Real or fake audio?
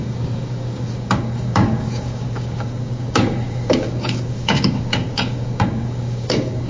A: fake